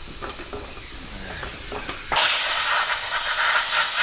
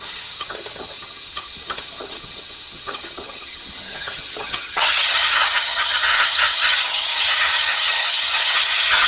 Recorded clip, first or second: first